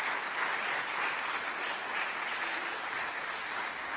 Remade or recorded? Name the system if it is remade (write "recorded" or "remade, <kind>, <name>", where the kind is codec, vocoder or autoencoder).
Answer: recorded